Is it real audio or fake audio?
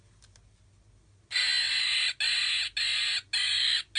real